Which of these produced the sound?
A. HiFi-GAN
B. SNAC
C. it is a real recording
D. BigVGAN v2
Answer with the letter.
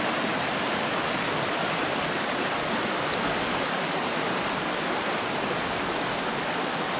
C